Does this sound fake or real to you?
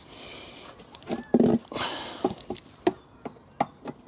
real